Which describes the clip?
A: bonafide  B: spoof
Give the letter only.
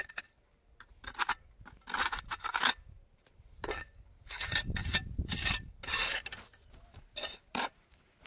B